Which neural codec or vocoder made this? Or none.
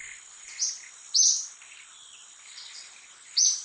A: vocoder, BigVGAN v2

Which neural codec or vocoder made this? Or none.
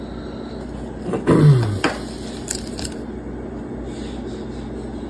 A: none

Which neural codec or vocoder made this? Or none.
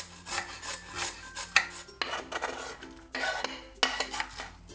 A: none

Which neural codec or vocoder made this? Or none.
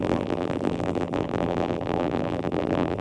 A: vocoder, BigVGAN v2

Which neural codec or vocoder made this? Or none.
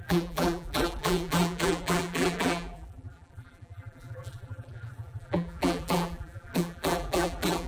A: vocoder, BigVGAN v2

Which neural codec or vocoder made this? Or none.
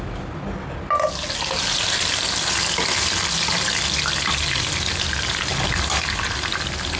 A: none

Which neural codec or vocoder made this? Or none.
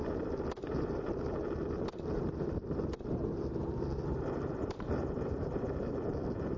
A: vocoder, BigVGAN v2